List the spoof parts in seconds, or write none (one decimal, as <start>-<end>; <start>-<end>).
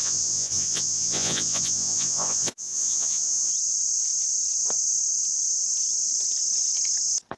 0.0-3.5